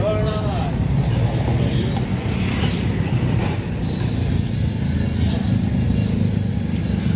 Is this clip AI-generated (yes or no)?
no